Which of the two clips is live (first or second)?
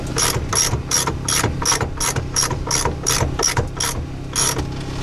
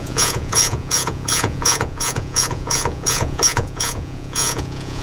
first